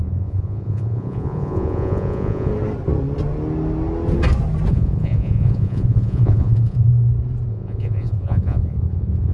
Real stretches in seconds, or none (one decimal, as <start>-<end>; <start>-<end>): 2.5-4.7; 6.9-7.5